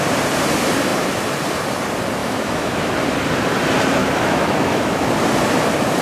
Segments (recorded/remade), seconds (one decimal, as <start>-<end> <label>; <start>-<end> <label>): 0.0-2.2 recorded; 2.2-2.9 remade; 2.9-4.0 recorded; 4.0-5.1 remade; 5.1-6.0 recorded